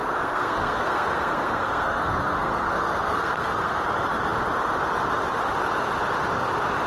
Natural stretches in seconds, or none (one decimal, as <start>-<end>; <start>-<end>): 3.8-6.9